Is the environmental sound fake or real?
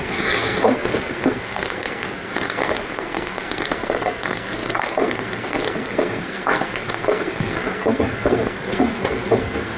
fake